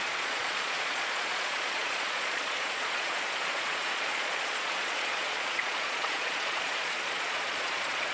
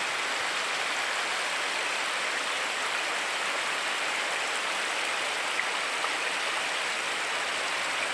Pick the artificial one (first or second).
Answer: first